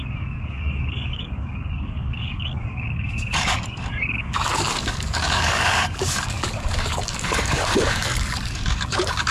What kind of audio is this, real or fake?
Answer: fake